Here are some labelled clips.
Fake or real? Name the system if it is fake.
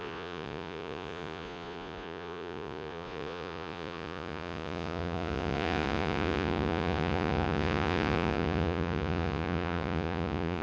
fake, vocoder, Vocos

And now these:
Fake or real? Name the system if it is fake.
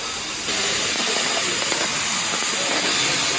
real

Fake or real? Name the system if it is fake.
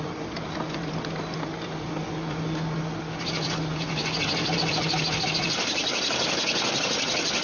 real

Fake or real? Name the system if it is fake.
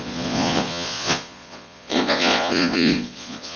fake, vocoder, Vocos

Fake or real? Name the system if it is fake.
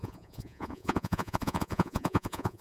fake, vocoder, Vocos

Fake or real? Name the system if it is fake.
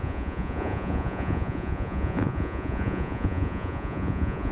fake, vocoder, Vocos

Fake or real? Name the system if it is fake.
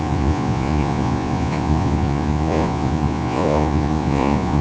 fake, vocoder, Vocos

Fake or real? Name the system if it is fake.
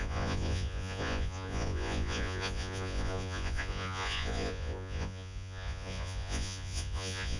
fake, vocoder, Vocos